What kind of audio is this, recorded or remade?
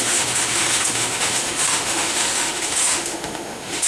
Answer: remade